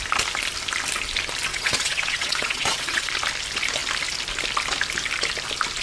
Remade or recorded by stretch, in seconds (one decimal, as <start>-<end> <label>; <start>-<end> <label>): 0.0-1.5 recorded; 1.5-3.1 remade; 3.1-5.8 recorded